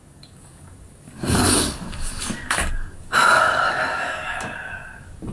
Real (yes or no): no